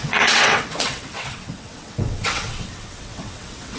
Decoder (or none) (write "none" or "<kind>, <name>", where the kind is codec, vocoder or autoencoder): vocoder, WaveNeXt